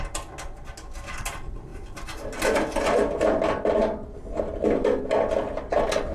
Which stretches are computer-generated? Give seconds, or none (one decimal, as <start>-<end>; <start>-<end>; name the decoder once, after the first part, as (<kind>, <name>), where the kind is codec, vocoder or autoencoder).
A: none